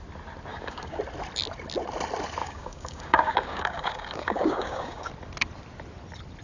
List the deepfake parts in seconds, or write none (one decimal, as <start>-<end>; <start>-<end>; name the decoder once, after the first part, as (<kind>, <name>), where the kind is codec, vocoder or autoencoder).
0.5-1.0 (codec, DAC); 2.4-5.1

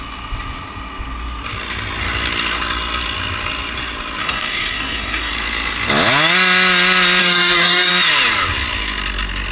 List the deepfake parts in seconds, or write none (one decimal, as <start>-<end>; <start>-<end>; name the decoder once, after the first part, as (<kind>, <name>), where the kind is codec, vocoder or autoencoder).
4.2-5.3 (codec, DAC); 7.2-7.9